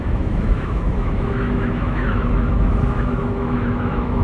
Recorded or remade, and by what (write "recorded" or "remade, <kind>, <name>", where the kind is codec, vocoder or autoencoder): remade, autoencoder, DAC-VAE